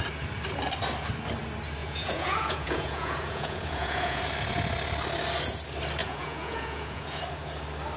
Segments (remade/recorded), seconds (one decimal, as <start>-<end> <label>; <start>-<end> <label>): 0.0-1.8 recorded; 1.8-4.2 remade; 4.2-6.0 recorded; 6.0-7.2 remade; 7.2-8.0 recorded